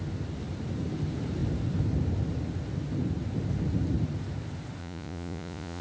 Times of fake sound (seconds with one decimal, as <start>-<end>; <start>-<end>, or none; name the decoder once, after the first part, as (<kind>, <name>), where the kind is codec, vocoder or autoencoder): 4.8-5.8 (vocoder, Vocos)